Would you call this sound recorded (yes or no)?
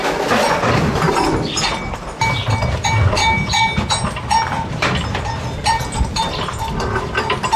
yes